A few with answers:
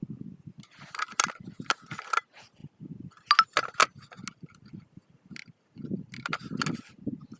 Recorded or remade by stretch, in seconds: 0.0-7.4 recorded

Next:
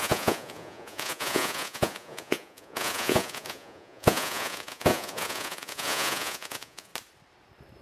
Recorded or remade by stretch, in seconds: 0.0-6.9 remade; 6.9-7.8 recorded

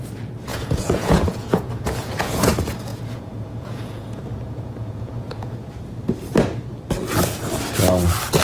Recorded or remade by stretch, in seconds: 0.0-0.5 recorded; 0.5-2.5 remade; 2.5-2.9 recorded; 2.9-5.7 remade; 5.7-8.4 recorded